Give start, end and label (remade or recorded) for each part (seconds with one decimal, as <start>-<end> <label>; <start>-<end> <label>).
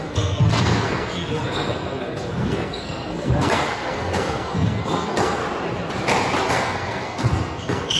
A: 0.0-5.4 remade; 5.4-6.5 recorded; 6.5-8.0 remade